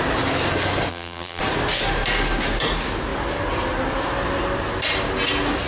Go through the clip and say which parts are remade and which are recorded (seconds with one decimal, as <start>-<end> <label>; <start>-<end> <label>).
0.0-0.9 recorded; 0.9-1.4 remade; 1.4-5.7 recorded